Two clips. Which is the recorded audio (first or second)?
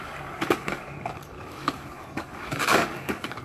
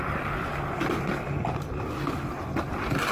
second